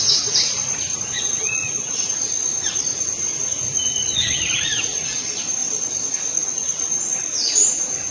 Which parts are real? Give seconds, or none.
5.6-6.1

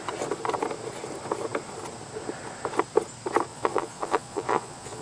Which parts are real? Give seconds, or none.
0.0-3.5